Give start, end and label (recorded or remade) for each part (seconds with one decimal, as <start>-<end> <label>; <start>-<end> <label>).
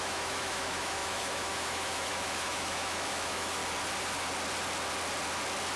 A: 0.0-3.6 remade; 3.6-5.8 recorded